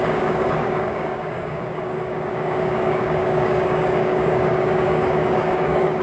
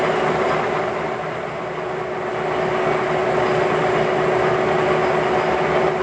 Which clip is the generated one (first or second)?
first